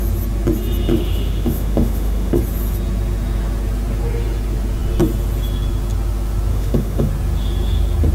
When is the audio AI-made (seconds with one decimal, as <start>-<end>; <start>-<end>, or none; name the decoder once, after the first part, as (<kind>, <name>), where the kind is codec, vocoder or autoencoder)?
0.9-2.4 (autoencoder, DAC-VAE); 6.5-7.1

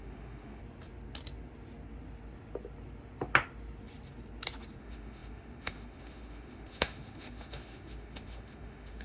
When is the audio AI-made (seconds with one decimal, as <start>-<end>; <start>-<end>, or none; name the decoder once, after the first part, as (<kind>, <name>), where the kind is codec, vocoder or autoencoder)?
0.0-0.6 (autoencoder, DAC-VAE); 4.8-9.0